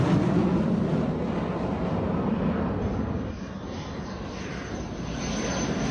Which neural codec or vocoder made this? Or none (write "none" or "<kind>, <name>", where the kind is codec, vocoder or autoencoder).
none